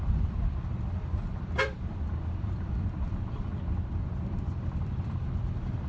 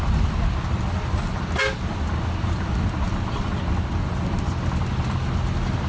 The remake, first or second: first